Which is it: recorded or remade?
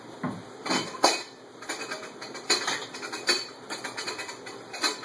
remade